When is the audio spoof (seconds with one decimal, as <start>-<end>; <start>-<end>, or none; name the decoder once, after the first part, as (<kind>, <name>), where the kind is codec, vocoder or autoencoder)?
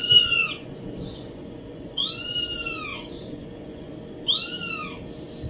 0.0-2.4 (vocoder, Vocos); 2.9-3.9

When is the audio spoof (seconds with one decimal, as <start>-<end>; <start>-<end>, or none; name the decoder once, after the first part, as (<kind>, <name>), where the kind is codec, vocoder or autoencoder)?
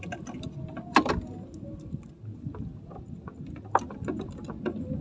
none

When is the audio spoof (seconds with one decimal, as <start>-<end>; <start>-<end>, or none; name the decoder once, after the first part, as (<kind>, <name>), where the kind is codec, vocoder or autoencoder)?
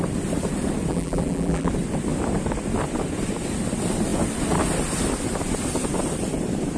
0.9-1.7 (vocoder, BigVGAN v2)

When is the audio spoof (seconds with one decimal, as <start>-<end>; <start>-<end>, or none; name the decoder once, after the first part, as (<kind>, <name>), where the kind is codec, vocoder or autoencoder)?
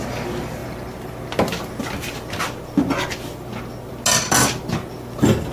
none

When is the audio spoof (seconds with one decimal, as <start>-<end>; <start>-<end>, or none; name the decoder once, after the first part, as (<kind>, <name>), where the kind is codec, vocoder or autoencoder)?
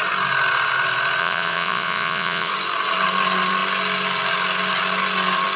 1.2-2.5 (vocoder, Vocos)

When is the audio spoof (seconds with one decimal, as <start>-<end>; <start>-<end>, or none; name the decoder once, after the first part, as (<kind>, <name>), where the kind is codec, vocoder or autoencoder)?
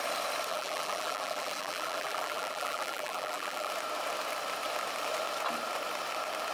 0.5-3.7 (vocoder, BigVGAN v2)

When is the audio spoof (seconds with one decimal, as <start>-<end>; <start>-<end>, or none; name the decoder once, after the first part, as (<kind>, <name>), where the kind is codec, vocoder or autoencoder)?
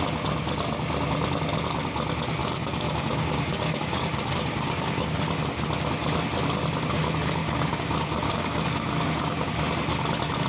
2.4-5.2 (codec, DAC); 7.4-9.6